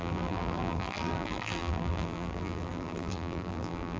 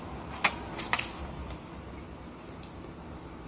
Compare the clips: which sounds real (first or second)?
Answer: second